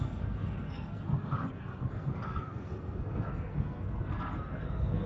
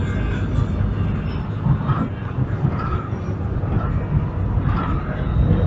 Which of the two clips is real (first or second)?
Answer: second